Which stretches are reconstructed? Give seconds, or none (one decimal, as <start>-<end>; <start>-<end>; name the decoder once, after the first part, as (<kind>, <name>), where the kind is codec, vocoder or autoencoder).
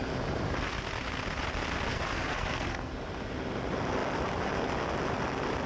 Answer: 1.9-2.9 (codec, SNAC)